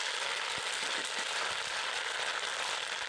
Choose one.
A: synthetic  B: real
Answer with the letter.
B